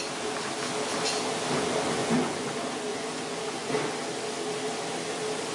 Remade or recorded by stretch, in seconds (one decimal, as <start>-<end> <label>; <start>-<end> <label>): 0.0-2.0 recorded; 2.0-2.5 remade; 2.5-2.9 recorded; 2.9-3.7 remade; 3.7-5.5 recorded